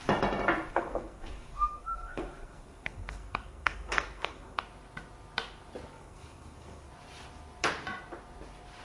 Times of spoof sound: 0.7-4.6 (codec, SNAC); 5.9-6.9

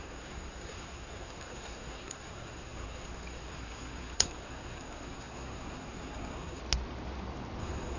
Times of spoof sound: 0.0-6.6 (codec, SNAC); 7.6-8.0

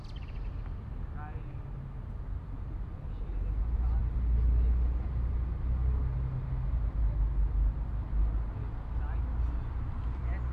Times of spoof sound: none

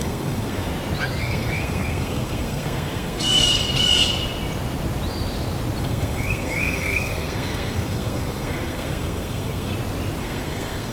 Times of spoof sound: 0.0-0.7 (codec, SNAC); 1.2-3.6; 5.8-9.7; 10.2-10.9

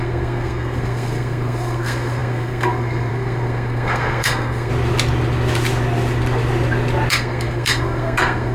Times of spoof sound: 0.0-4.7 (codec, SNAC); 7.1-8.5

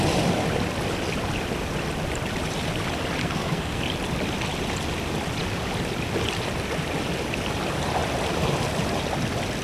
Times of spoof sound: 3.2-3.8 (codec, SNAC)